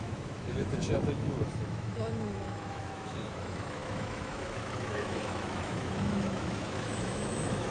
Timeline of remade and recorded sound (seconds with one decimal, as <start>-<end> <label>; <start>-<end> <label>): 0.0-7.7 remade